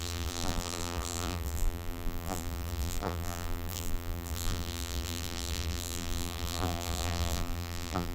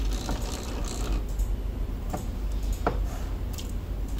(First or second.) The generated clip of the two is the first